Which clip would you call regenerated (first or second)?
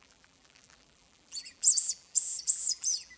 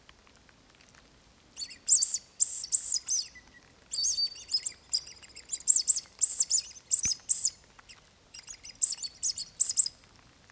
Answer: first